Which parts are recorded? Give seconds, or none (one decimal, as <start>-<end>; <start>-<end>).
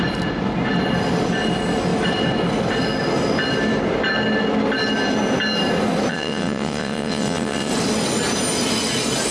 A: 0.0-6.1; 7.7-9.3